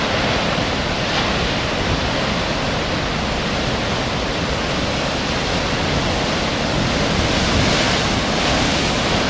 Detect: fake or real real